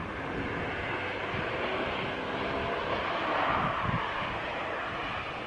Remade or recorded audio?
recorded